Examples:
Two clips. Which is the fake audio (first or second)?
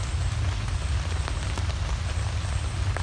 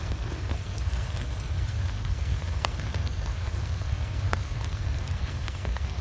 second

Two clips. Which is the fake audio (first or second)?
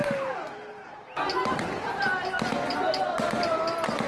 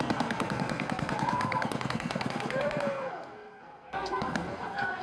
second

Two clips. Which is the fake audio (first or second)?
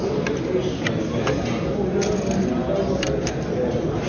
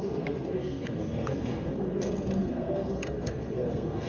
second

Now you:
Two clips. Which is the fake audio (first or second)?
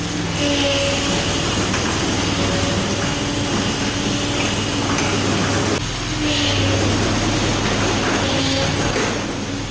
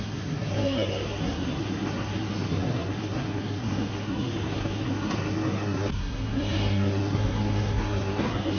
second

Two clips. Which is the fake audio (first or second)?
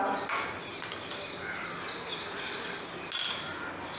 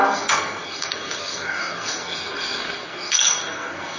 second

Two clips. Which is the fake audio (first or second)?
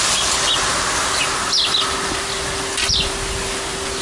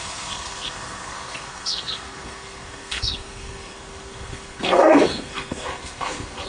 second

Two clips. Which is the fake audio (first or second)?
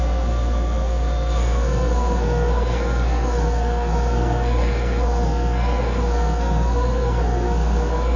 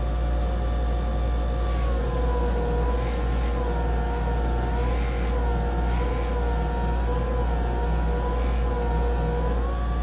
first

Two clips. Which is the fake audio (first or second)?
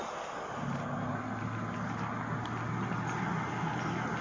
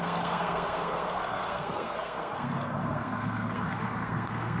second